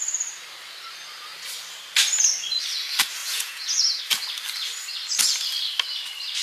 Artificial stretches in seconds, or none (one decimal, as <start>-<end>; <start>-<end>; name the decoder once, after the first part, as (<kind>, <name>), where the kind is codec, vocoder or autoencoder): 3.2-4.0 (vocoder, Vocos)